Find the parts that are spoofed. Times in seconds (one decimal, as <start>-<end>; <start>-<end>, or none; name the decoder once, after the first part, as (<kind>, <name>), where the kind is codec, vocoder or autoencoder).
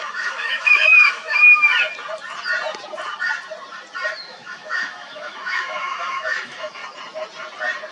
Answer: 0.0-1.7 (autoencoder, DAC-VAE); 4.2-6.8